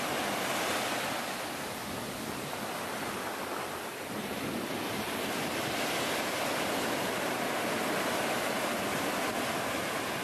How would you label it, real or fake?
real